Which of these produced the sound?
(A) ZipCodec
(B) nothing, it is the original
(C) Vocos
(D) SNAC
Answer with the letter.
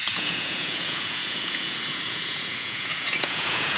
C